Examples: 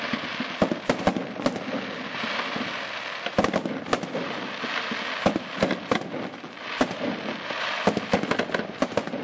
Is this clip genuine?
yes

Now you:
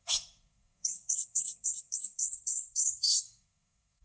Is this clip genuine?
no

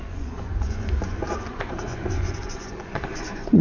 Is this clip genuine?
no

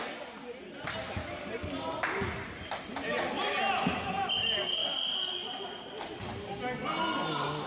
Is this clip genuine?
yes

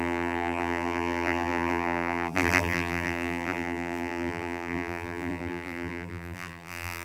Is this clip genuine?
no